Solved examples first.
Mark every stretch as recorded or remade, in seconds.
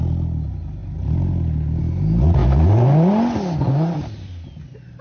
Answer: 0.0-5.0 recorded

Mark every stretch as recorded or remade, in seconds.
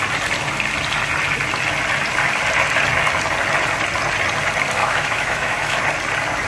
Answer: 0.0-4.8 recorded; 4.8-5.8 remade; 5.8-6.5 recorded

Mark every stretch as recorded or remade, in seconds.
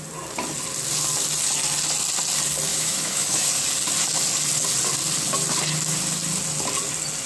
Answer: 0.0-2.7 recorded; 2.7-3.5 remade; 3.5-7.3 recorded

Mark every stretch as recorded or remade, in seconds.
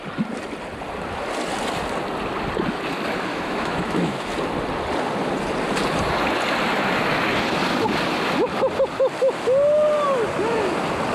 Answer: 0.0-3.3 recorded; 3.3-4.3 remade; 4.3-11.1 recorded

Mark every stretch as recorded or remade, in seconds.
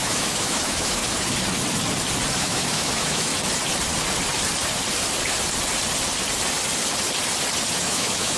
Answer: 0.0-1.0 remade; 1.0-2.4 recorded; 2.4-3.3 remade; 3.3-7.8 recorded; 7.8-8.4 remade